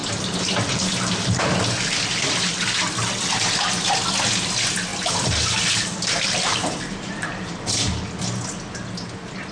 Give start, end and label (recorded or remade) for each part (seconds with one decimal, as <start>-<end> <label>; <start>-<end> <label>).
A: 0.0-1.5 remade; 1.5-4.9 recorded; 4.9-7.5 remade; 7.5-9.5 recorded